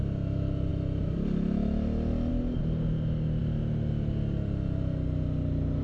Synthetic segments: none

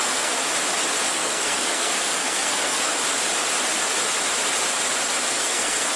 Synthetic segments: 0.0-0.5 (codec, SNAC); 1.1-2.9; 5.3-6.0

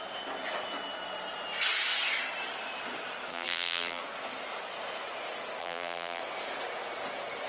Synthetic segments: 3.3-4.0 (vocoder, BigVGAN v2); 5.6-6.2

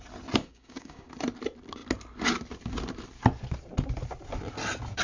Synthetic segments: 0.4-1.1 (codec, DAC)

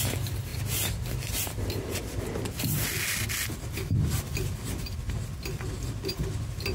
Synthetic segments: none

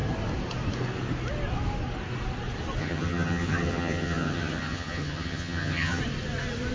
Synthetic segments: 2.8-6.0 (vocoder, HiFi-GAN)